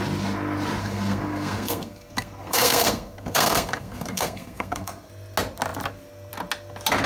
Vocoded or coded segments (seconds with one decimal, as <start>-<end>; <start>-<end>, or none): 0.8-5.1